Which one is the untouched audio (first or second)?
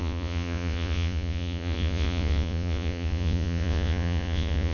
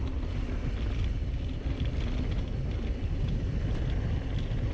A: second